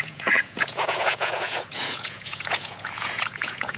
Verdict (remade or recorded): remade